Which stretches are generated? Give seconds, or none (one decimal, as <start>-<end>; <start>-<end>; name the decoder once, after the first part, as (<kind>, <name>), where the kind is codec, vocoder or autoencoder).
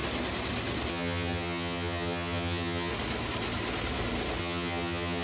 0.9-2.9 (vocoder, HiFi-GAN); 4.4-5.2